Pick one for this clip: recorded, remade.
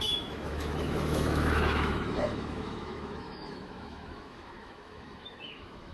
remade